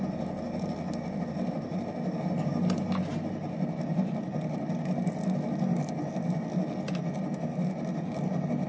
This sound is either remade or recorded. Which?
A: recorded